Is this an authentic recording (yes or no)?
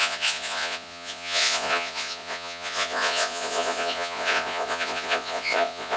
no